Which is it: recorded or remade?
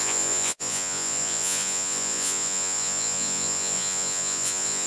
remade